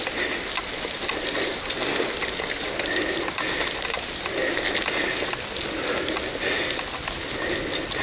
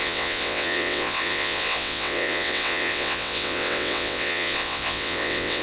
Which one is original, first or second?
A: first